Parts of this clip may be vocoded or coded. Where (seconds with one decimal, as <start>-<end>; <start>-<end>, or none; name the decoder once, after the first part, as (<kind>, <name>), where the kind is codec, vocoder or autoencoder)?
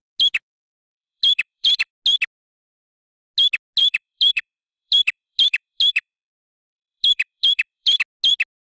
0.9-1.9 (vocoder, BigVGAN v2); 3.8-8.0